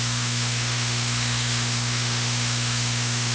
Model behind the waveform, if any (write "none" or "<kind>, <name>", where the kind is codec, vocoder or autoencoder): autoencoder, DAC-VAE